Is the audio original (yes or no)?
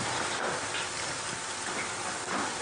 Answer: yes